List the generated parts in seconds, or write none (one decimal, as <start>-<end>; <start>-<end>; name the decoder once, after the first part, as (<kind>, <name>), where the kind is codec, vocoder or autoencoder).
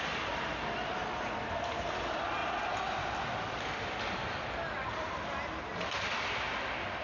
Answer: none